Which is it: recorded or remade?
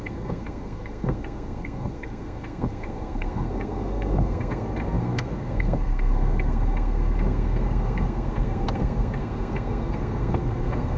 remade